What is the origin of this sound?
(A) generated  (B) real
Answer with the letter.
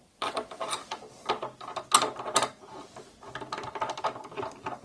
B